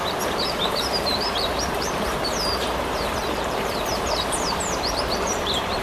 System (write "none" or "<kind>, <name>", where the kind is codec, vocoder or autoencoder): vocoder, BigVGAN v2